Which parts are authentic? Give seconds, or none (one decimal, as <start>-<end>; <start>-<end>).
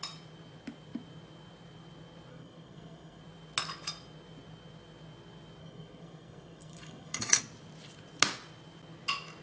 0.0-2.3; 3.2-5.6; 7.4-9.4